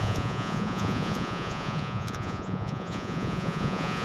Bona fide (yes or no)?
no